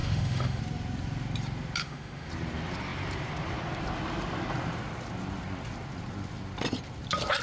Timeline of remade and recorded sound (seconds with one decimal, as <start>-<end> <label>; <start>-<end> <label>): 0.0-0.6 remade; 0.6-1.8 recorded; 1.8-2.3 remade; 2.3-7.4 recorded